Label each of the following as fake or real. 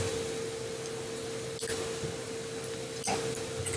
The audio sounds real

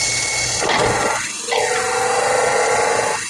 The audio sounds real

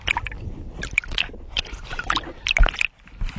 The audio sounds real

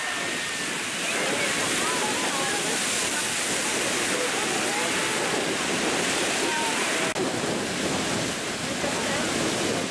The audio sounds real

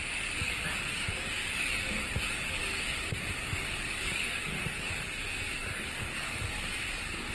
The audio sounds fake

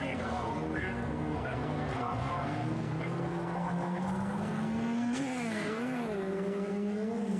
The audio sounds fake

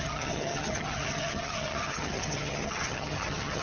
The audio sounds fake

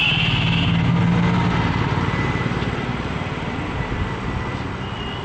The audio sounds real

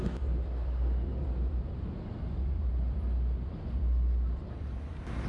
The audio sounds real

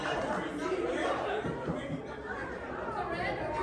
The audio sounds fake